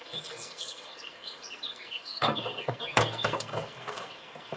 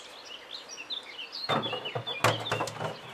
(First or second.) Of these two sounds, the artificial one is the first